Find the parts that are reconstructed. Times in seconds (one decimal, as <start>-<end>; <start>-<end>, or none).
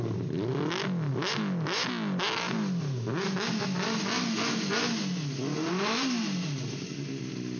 none